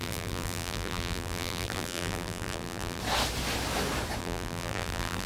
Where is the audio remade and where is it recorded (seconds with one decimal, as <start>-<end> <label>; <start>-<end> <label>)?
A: 0.0-3.0 remade; 3.0-4.2 recorded; 4.2-5.3 remade